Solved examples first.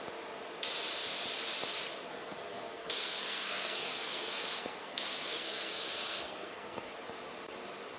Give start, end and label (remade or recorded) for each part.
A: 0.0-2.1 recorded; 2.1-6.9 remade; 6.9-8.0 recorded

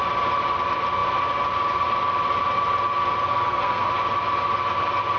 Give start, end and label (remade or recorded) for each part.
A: 0.0-3.3 recorded; 3.3-3.9 remade; 3.9-5.2 recorded

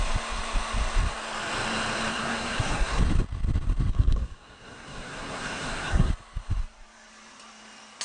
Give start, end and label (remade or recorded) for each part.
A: 0.0-2.1 recorded; 2.1-3.0 remade; 3.0-3.9 recorded; 3.9-6.1 remade; 6.1-8.0 recorded

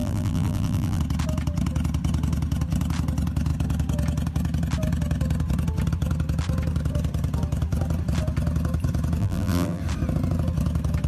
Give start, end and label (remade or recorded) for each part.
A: 0.0-1.0 remade; 1.0-9.2 recorded; 9.2-9.8 remade; 9.8-11.1 recorded

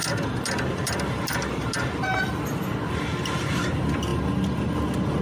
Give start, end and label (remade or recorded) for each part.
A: 0.0-5.2 recorded

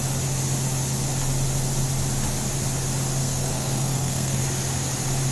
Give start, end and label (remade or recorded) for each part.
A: 0.0-3.2 recorded; 3.2-4.4 remade; 4.4-5.3 recorded